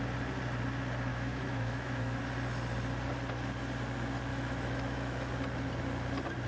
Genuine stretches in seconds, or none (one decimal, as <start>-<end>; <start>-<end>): 0.0-1.1; 2.2-4.3; 5.3-6.5